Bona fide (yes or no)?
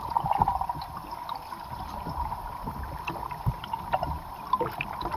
yes